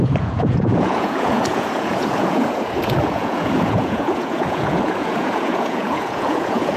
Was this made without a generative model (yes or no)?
no